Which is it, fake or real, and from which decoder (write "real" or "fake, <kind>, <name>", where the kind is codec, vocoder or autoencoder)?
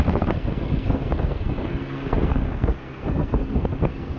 fake, codec, SNAC